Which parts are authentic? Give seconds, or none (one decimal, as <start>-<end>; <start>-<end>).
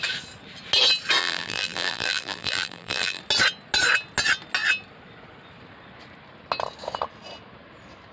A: 0.0-1.2; 3.2-8.1